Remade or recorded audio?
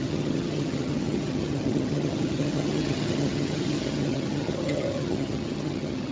remade